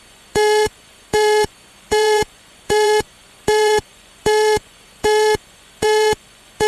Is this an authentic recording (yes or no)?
no